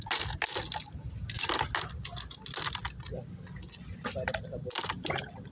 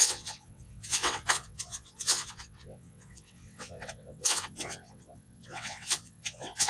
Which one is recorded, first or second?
first